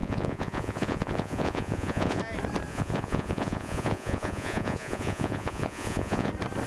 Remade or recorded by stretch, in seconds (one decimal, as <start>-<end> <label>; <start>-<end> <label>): 0.0-2.2 remade; 2.2-2.7 recorded; 2.7-6.3 remade; 6.3-6.7 recorded